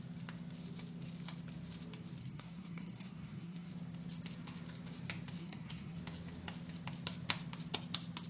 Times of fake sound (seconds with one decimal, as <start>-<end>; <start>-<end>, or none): 2.2-3.7; 5.4-6.0